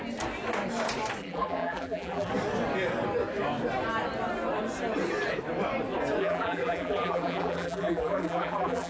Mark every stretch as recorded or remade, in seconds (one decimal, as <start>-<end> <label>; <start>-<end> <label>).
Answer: 0.0-1.2 recorded; 1.2-2.3 remade; 2.3-6.2 recorded; 6.2-8.9 remade